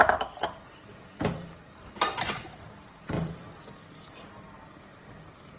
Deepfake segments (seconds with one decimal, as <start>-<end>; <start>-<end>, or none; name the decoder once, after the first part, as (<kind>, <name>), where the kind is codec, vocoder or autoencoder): 0.0-3.4 (vocoder, BigVGAN v2)